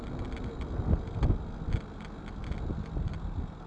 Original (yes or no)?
yes